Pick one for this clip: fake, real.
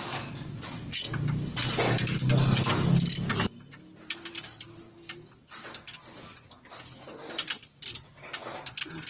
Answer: real